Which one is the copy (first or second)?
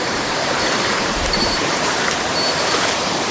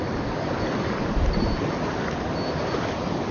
first